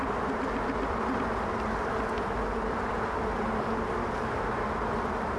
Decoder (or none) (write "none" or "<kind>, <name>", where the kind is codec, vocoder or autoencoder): none